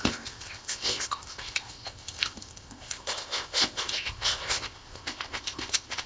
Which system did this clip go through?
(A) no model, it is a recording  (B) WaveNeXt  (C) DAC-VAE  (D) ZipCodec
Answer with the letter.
D